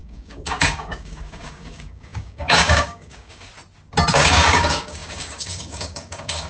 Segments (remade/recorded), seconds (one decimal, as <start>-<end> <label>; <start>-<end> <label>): 0.0-3.5 remade; 3.5-4.1 recorded; 4.1-6.5 remade